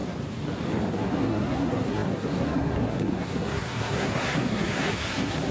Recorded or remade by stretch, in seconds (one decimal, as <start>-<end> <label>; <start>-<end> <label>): 0.0-0.9 recorded; 0.9-5.5 remade